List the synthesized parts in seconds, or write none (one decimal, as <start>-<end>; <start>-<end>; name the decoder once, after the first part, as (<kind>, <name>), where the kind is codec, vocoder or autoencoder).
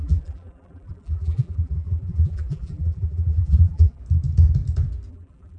0.0-4.0 (vocoder, BigVGAN v2); 5.1-5.6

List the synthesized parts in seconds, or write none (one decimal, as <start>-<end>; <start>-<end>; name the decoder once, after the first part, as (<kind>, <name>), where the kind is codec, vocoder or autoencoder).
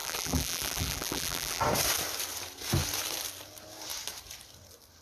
0.0-1.6 (vocoder, BigVGAN v2)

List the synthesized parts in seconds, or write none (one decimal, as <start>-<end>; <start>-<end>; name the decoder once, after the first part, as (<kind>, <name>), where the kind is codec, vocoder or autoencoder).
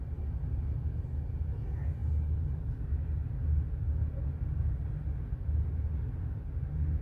none